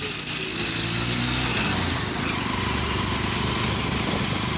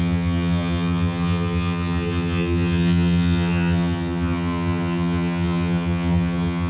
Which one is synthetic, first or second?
second